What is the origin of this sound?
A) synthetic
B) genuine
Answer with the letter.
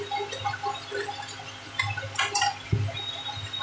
B